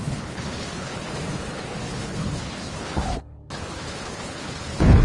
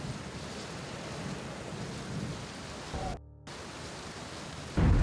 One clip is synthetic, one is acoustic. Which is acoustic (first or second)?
second